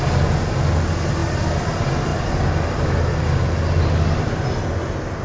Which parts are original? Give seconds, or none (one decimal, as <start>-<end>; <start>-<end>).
0.0-5.2